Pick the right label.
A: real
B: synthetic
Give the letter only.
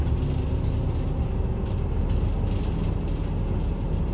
A